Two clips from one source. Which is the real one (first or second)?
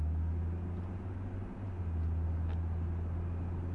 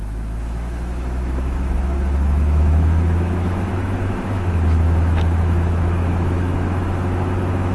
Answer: first